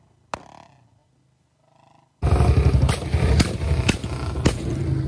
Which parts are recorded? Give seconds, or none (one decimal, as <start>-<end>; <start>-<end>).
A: 0.0-5.1